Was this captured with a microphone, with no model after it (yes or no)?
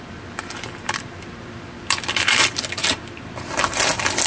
no